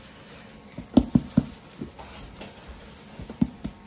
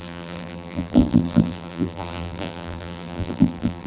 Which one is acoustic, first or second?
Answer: first